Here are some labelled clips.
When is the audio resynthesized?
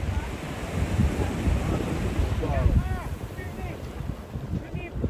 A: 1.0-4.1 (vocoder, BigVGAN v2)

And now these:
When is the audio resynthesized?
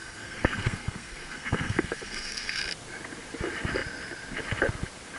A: 0.0-2.6 (codec, SNAC)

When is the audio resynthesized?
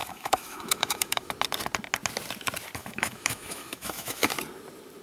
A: 0.0-1.3 (autoencoder, DAC-VAE); 2.8-4.3